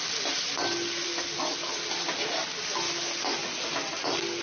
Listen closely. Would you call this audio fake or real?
real